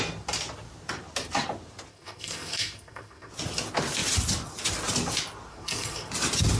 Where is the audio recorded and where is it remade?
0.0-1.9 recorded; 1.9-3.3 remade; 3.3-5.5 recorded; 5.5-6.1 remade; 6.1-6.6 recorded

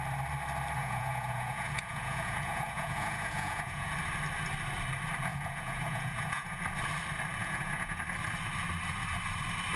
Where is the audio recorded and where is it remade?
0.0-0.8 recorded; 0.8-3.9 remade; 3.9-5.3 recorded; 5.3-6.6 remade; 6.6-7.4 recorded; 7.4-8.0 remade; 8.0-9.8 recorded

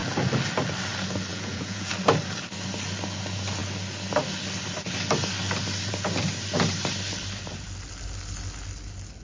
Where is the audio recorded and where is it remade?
0.0-1.3 recorded; 1.3-1.9 remade; 1.9-9.2 recorded

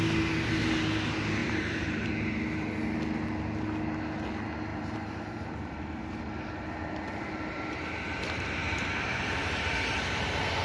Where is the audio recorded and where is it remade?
0.0-1.4 recorded; 1.4-2.1 remade; 2.1-4.7 recorded; 4.7-6.3 remade; 6.3-8.6 recorded; 8.6-9.6 remade; 9.6-10.6 recorded

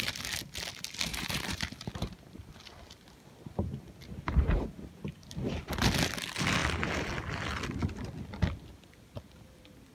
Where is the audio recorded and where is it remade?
0.0-1.1 recorded; 1.1-2.5 remade; 2.5-9.9 recorded